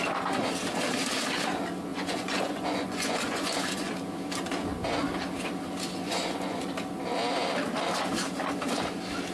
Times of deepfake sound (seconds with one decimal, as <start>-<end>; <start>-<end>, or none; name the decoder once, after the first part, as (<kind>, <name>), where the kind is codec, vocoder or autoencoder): 1.9-3.9 (vocoder, Vocos); 6.0-6.6